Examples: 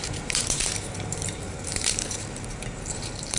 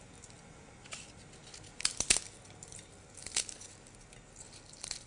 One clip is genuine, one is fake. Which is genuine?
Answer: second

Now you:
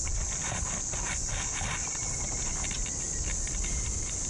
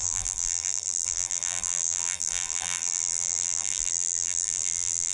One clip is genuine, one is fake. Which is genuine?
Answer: first